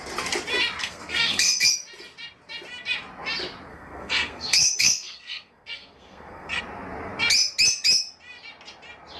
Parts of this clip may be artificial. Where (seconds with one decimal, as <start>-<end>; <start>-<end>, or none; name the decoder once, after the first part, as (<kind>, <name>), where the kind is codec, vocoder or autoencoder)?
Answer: 0.8-1.7 (codec, SNAC); 3.7-6.6